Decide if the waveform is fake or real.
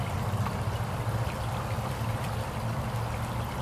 real